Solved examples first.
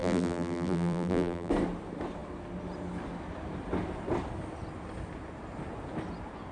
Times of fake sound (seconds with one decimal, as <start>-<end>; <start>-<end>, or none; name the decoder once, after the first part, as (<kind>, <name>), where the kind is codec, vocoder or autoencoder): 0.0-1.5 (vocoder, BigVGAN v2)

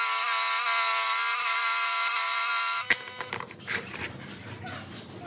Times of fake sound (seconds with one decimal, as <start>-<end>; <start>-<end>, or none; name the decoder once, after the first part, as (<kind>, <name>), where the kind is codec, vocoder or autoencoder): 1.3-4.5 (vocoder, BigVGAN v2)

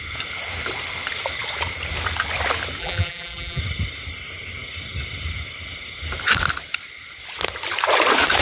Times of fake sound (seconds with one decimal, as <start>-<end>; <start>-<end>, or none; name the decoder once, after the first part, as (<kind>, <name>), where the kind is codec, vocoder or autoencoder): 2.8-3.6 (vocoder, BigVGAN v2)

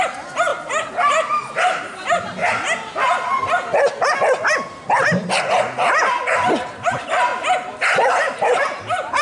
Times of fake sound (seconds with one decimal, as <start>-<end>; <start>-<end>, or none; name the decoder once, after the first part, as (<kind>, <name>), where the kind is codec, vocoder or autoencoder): 0.0-0.5 (vocoder, BigVGAN v2); 1.6-2.4; 6.3-7.3; 8.1-9.2

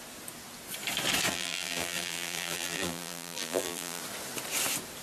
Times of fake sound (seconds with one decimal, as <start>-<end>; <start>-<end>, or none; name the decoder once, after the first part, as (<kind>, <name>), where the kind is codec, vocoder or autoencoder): 1.3-4.0 (vocoder, BigVGAN v2)